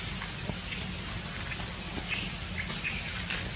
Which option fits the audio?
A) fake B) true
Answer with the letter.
B